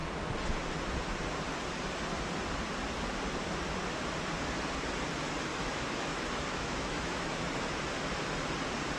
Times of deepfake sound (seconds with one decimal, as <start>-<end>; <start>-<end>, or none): 5.5-7.8